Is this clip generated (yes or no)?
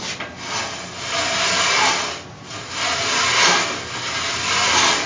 no